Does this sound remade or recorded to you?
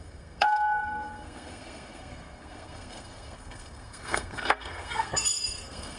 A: remade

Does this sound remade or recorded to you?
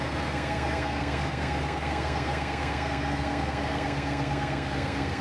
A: remade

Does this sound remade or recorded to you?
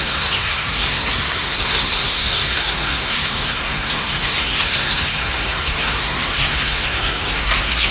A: remade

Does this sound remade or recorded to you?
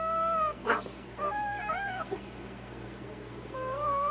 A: remade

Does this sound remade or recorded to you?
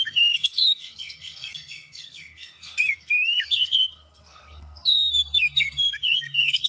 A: remade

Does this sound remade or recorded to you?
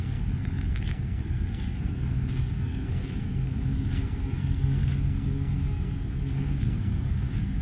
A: remade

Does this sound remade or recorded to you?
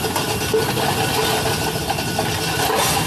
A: recorded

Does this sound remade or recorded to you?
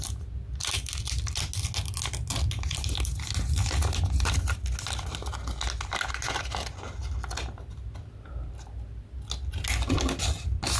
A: recorded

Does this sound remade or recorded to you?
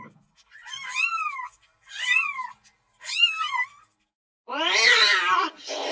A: recorded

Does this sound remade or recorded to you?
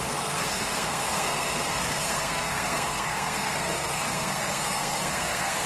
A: remade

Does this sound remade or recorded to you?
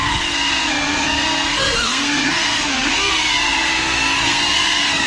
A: remade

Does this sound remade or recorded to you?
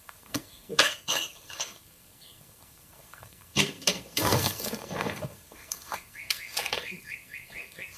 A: remade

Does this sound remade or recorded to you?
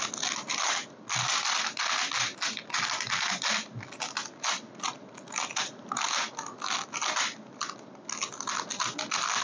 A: recorded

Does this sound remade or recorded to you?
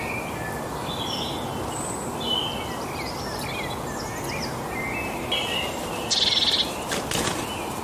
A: recorded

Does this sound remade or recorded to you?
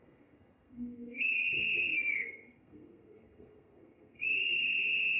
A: remade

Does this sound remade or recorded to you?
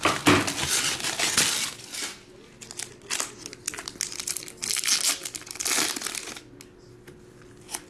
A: recorded